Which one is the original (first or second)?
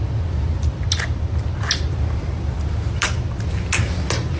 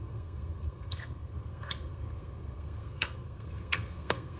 first